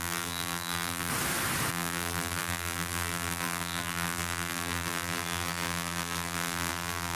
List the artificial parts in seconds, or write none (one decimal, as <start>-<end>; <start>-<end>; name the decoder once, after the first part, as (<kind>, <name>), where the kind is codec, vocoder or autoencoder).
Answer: 0.0-1.1 (vocoder, BigVGAN v2); 1.7-7.2